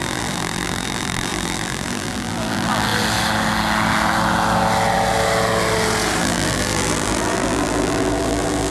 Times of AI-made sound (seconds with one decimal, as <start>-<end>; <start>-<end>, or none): 0.0-2.9; 6.2-8.7